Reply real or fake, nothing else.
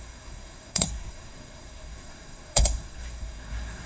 fake